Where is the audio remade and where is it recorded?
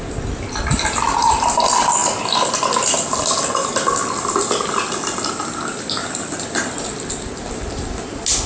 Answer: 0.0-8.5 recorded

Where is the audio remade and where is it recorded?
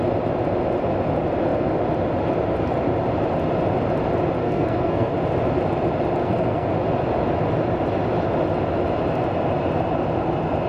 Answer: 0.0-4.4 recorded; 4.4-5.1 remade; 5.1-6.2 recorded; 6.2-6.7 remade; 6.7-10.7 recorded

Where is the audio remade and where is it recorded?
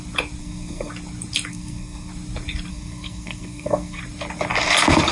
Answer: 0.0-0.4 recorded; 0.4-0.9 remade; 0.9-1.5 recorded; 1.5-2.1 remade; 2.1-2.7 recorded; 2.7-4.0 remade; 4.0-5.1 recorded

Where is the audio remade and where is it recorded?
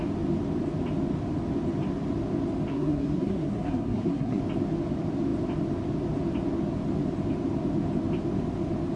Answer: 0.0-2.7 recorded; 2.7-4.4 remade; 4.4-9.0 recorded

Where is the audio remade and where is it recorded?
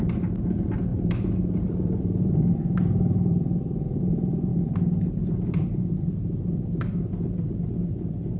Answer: 0.0-0.9 recorded; 0.9-4.0 remade; 4.0-8.4 recorded